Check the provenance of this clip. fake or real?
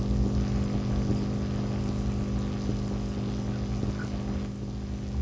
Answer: real